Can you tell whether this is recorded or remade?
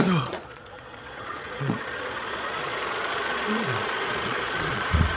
remade